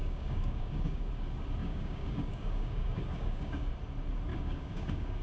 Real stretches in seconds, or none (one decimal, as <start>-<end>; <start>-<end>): 1.1-1.6; 3.7-4.3